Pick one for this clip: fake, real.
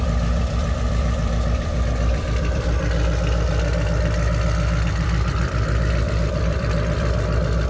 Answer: fake